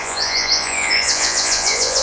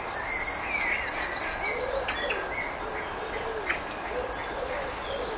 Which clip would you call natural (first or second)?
second